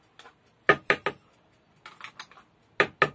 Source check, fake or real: real